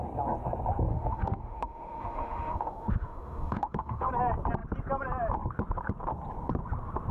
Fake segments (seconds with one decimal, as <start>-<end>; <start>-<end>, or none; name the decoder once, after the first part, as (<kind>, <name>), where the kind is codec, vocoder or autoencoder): 0.9-4.1 (autoencoder, DAC-VAE)